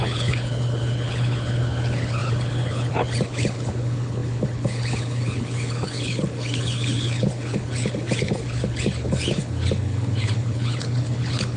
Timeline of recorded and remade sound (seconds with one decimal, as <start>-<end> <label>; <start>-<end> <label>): 0.0-11.6 remade